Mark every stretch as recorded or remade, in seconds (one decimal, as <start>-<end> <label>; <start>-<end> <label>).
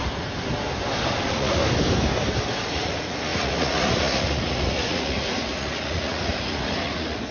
0.0-1.1 recorded; 1.1-1.6 remade; 1.6-2.6 recorded; 2.6-7.3 remade